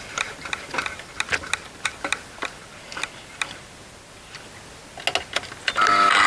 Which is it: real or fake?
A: real